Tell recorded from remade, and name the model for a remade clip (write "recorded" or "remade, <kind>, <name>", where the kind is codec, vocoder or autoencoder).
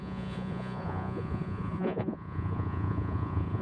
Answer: remade, vocoder, Vocos